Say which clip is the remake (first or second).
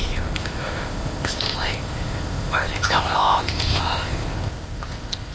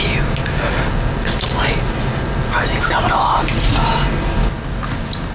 first